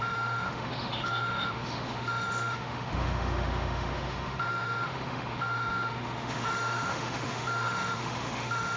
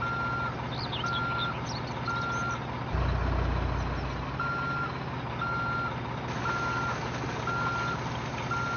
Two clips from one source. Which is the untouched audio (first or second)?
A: second